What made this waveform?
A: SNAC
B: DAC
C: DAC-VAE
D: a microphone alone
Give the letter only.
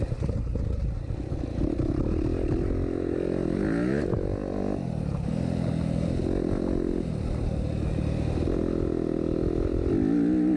D